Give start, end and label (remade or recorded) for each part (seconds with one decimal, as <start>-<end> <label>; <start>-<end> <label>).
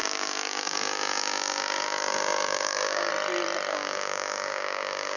0.0-3.1 remade; 3.1-3.7 recorded; 3.7-5.2 remade